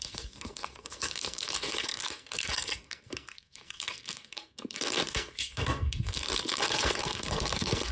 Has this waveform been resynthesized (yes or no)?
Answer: yes